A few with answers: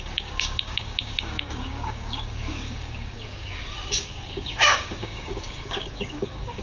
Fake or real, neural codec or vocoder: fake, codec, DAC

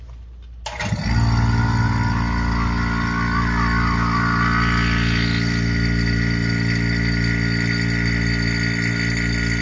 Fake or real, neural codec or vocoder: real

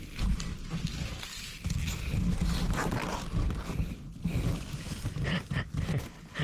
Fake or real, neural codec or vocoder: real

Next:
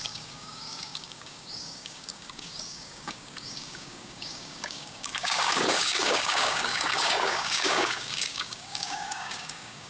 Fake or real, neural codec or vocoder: fake, codec, DAC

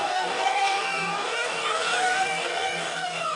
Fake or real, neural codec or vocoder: fake, codec, DAC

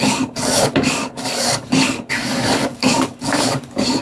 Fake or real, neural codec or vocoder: fake, codec, DAC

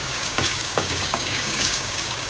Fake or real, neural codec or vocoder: fake, codec, DAC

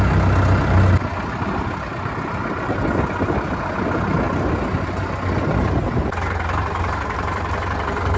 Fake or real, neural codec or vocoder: real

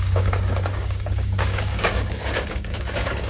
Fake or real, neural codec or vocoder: fake, codec, DAC